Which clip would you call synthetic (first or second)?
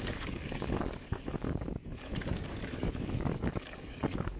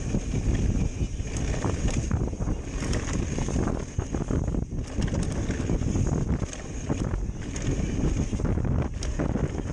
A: first